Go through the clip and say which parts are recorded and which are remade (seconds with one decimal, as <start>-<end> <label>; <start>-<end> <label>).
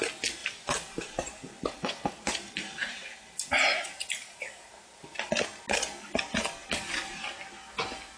0.0-0.4 recorded; 0.4-5.3 remade; 5.3-8.2 recorded